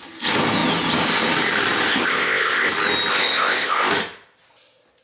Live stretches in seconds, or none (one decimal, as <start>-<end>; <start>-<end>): 0.0-1.9; 2.7-3.1; 3.9-5.0